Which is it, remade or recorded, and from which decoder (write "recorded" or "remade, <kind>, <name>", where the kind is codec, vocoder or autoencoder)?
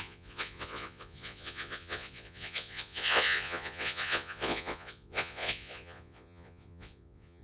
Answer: remade, vocoder, Vocos